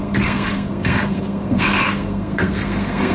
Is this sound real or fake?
fake